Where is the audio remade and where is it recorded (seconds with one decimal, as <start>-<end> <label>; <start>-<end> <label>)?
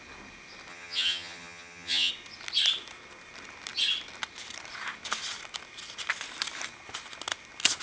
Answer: 0.0-0.7 recorded; 0.7-2.1 remade; 2.1-7.8 recorded